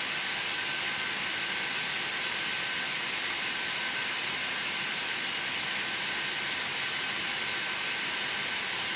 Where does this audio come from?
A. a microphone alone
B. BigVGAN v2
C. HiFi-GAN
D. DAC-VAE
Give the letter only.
A